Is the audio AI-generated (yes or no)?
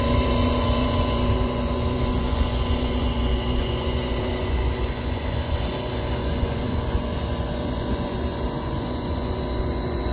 yes